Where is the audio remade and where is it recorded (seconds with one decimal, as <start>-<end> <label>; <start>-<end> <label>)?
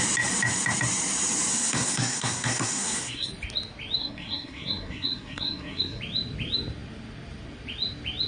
0.0-1.5 recorded; 1.5-3.3 remade; 3.3-4.0 recorded; 4.0-6.0 remade; 6.0-8.3 recorded